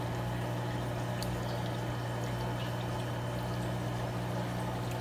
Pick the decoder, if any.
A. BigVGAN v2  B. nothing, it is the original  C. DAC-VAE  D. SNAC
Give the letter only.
B